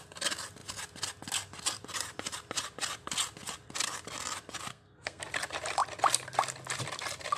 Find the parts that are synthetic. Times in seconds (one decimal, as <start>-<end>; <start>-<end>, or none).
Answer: 4.7-5.2